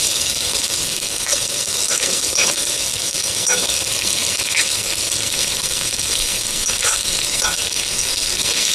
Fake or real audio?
fake